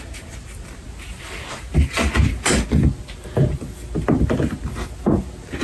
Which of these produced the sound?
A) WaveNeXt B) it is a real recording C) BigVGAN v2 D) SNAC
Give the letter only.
B